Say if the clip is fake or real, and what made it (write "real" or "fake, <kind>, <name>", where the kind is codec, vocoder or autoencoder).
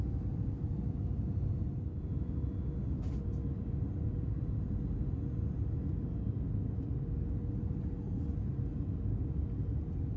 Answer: real